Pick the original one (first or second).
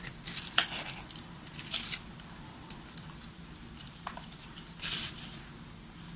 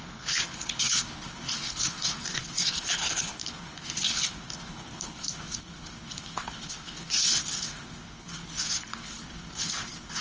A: first